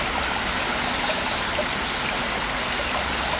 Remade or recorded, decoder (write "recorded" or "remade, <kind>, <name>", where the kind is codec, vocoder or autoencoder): recorded